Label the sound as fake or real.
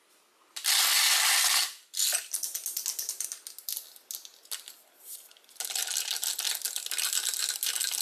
real